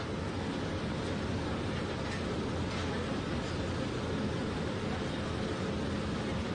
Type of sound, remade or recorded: recorded